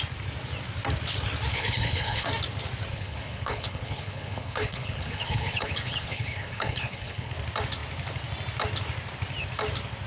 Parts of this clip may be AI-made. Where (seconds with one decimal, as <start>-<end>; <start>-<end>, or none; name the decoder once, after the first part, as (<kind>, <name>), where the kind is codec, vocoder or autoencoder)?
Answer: 1.5-2.3 (codec, HILCodec); 2.9-7.3